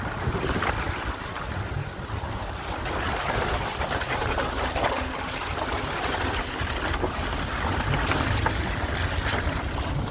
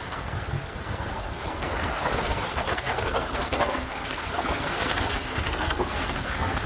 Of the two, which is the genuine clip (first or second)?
first